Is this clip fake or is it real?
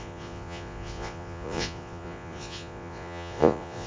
fake